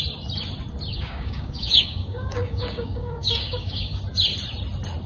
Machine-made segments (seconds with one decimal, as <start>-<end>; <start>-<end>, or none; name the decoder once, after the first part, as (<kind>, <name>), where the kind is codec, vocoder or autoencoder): 0.9-4.0 (codec, DAC)